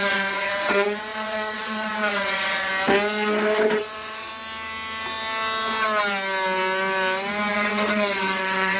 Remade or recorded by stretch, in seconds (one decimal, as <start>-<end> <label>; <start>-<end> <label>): 0.0-2.7 remade; 2.7-3.8 recorded; 3.8-4.3 remade; 4.3-7.5 recorded; 7.5-8.8 remade